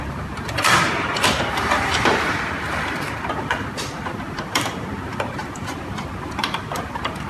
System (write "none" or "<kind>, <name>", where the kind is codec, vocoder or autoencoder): vocoder, BigVGAN v2